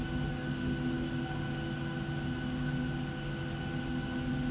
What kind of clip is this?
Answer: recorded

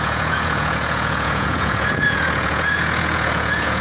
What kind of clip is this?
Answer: remade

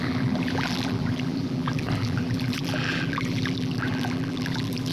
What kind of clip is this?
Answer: remade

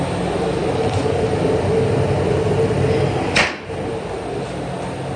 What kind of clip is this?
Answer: recorded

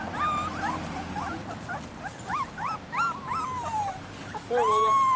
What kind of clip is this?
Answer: recorded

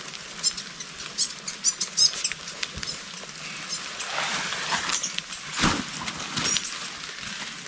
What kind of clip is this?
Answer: recorded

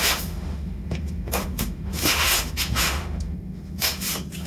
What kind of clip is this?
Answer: remade